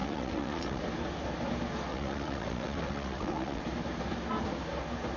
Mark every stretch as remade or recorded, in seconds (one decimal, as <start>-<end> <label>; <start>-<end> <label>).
0.0-0.8 remade; 0.8-1.9 recorded; 1.9-3.6 remade; 3.6-5.2 recorded